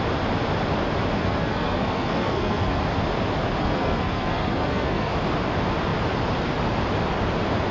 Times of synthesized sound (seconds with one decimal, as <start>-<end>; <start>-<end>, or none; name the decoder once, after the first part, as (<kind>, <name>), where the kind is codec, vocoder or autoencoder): 1.2-2.8 (codec, SNAC); 3.6-5.1

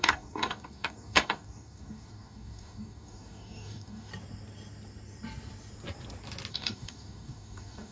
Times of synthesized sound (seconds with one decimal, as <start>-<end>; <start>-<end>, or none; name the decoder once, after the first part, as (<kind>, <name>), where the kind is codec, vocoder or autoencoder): 0.0-4.1 (codec, DAC); 6.5-7.9

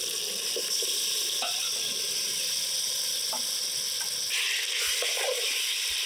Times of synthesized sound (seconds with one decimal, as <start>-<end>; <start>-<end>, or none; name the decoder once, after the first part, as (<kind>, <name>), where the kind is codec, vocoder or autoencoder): none

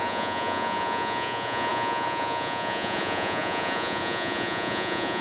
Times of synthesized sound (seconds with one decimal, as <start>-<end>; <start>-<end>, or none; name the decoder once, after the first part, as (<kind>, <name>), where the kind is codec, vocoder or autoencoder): 0.0-5.2 (vocoder, Vocos)